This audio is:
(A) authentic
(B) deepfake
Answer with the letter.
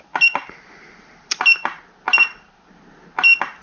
A